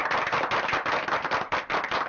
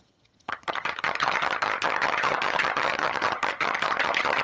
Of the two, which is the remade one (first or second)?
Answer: second